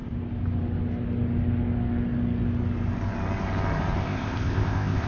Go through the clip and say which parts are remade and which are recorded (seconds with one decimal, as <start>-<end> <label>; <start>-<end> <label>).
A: 0.0-4.0 recorded; 4.0-5.1 remade